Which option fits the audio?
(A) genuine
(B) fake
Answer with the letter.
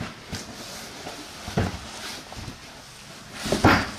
A